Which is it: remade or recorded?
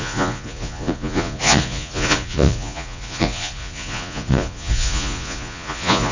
remade